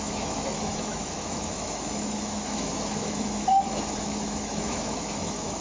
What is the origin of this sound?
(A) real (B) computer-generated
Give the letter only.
B